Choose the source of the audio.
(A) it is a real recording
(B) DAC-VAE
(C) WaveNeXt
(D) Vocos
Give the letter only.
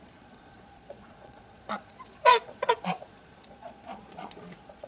D